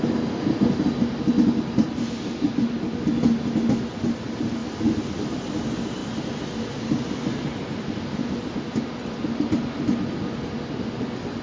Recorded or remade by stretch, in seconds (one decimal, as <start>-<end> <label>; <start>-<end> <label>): 0.0-11.4 recorded